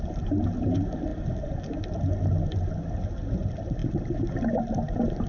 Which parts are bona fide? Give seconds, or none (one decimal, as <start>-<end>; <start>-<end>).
0.0-5.3